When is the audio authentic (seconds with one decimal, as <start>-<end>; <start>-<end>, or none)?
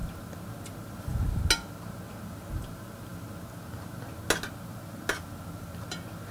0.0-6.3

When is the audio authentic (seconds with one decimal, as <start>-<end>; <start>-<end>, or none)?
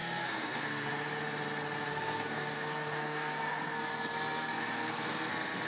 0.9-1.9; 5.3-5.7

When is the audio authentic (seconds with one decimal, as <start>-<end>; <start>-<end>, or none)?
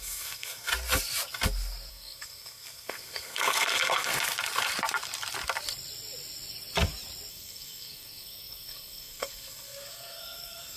0.7-1.9; 4.1-7.3